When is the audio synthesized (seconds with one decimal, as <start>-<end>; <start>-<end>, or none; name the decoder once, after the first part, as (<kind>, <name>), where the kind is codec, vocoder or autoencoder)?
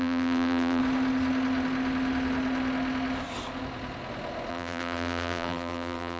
0.0-0.8 (vocoder, BigVGAN v2); 4.5-6.2